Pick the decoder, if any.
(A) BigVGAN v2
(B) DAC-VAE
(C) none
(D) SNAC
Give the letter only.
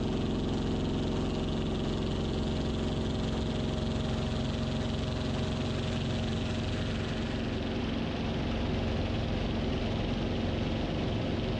C